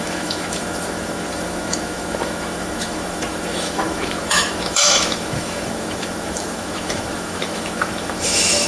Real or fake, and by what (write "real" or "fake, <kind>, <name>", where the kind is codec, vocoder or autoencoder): fake, autoencoder, DAC-VAE